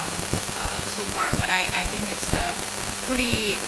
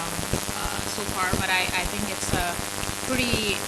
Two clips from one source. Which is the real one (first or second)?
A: second